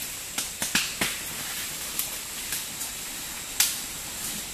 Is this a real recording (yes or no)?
yes